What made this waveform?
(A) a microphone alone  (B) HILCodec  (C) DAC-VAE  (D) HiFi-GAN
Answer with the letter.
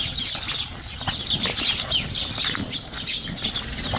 A